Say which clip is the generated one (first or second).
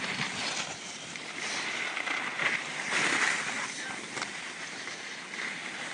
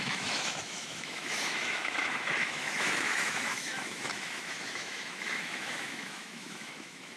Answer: second